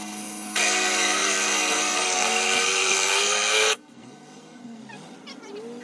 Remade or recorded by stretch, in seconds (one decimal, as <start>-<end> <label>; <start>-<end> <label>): 0.0-4.8 remade; 4.8-5.8 recorded